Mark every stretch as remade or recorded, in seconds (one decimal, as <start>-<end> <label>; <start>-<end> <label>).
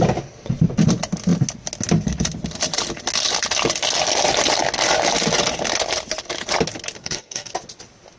0.0-7.0 recorded; 7.0-7.5 remade; 7.5-8.2 recorded